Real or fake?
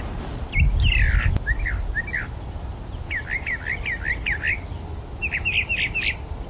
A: real